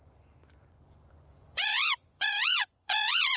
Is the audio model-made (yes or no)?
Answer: yes